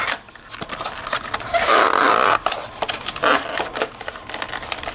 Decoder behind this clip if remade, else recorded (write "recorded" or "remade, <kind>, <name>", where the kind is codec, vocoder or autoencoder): recorded